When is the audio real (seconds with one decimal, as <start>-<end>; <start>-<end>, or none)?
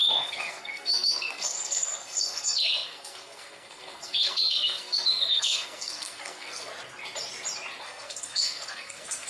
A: 6.7-7.8